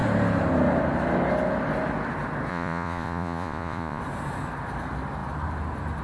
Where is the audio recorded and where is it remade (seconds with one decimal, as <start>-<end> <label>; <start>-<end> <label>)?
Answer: 0.0-2.5 recorded; 2.5-4.0 remade; 4.0-6.0 recorded